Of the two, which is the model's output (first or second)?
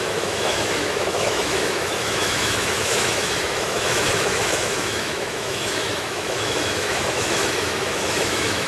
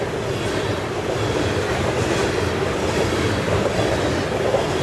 first